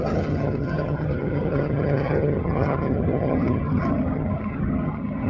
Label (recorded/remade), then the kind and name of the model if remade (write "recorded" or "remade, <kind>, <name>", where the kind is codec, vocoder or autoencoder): remade, vocoder, HiFi-GAN